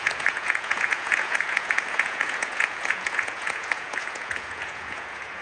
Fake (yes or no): yes